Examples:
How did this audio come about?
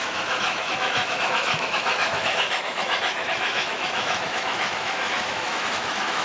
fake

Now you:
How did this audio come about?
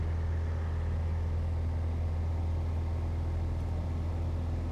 real